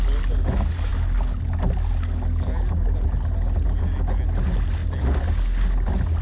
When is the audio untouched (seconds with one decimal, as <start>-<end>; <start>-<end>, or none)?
0.0-6.2